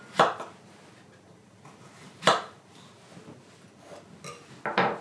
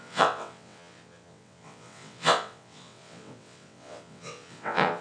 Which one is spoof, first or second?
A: second